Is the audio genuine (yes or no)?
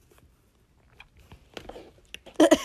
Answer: yes